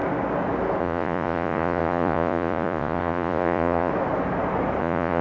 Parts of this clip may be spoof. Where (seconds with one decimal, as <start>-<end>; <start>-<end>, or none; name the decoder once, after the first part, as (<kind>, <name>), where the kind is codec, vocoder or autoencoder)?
0.8-3.9 (vocoder, Vocos); 4.8-5.2